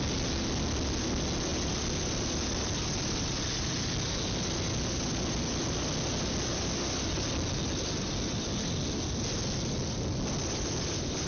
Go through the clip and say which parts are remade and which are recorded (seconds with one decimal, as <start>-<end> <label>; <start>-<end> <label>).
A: 0.0-11.3 recorded